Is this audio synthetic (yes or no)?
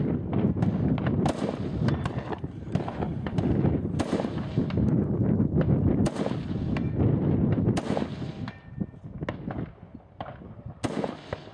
no